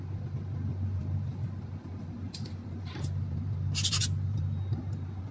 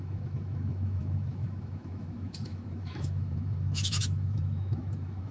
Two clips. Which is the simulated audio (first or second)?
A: second